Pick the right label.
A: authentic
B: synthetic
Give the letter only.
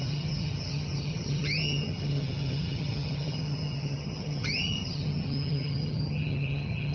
B